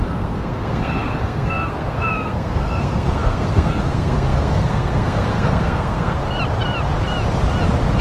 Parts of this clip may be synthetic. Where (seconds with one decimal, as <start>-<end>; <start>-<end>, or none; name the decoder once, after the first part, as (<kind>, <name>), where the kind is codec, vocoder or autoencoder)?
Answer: 0.0-6.2 (codec, SNAC)